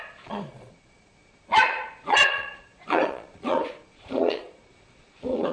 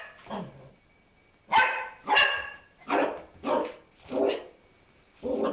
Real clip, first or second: second